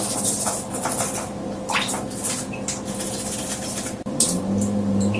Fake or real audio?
real